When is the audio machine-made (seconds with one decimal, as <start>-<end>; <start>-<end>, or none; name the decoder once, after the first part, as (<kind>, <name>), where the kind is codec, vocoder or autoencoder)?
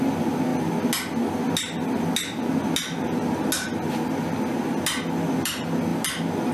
none